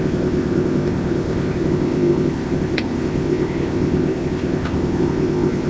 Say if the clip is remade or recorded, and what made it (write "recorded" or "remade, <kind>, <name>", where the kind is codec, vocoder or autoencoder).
remade, codec, ZipCodec